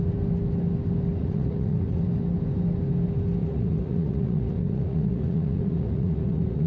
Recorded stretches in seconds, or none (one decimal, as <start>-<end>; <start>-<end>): 0.0-1.2; 2.0-3.4